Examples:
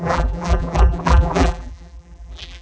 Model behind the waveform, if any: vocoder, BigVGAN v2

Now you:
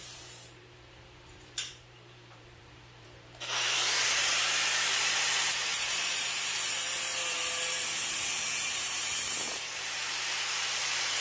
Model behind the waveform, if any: vocoder, BigVGAN v2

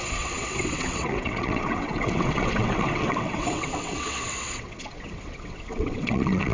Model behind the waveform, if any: vocoder, WaveNeXt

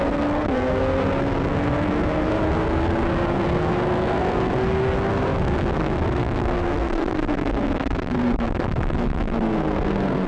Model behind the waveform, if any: codec, SNAC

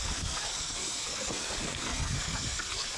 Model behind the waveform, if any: codec, SNAC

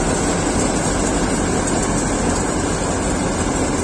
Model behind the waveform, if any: none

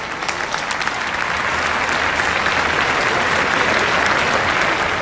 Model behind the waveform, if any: none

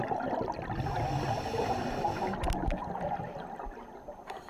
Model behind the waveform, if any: none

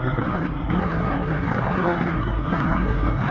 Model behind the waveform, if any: codec, SNAC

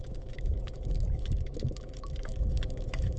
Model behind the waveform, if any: autoencoder, DAC-VAE